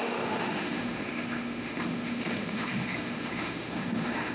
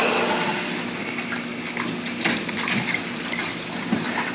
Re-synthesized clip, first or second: first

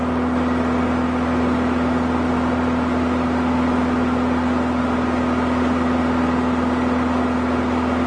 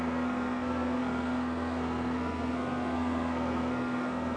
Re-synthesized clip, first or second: second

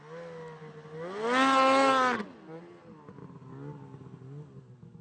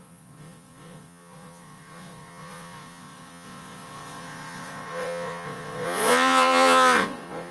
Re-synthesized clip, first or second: second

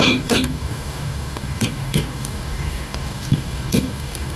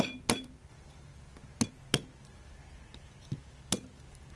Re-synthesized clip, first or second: first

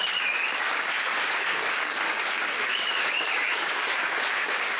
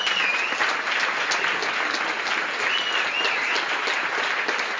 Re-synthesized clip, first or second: first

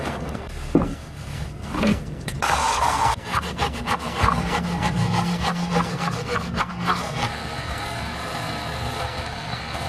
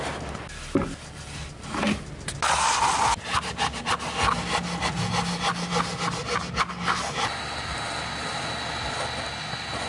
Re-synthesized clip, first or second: first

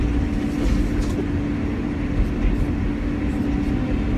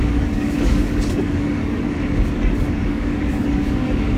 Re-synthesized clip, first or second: second